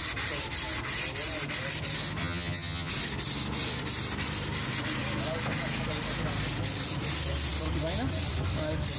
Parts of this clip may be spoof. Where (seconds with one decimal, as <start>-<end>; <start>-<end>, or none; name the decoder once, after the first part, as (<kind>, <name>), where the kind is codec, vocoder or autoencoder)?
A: 2.2-2.9 (vocoder, HiFi-GAN)